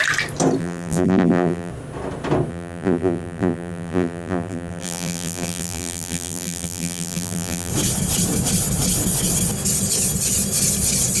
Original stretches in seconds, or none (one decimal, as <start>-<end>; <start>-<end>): 0.0-0.6; 1.7-2.5; 7.7-11.2